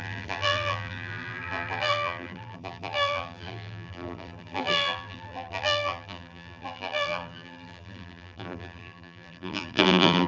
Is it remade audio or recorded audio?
remade